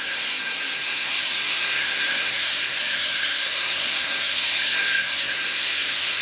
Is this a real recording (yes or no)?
no